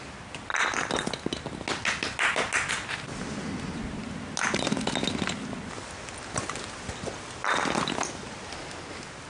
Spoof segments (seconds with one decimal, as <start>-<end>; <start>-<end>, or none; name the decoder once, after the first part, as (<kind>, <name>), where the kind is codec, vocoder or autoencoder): none